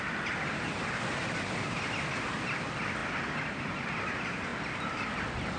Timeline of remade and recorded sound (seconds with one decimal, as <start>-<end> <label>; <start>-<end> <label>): 0.0-5.6 recorded